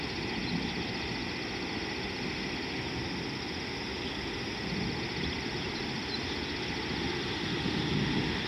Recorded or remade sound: recorded